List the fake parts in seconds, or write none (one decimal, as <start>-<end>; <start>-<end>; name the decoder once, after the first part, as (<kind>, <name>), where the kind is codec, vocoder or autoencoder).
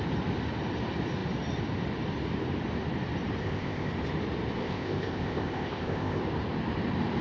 3.4-3.9 (codec, ZipCodec); 4.6-6.2